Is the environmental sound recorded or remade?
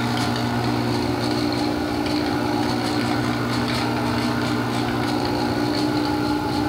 remade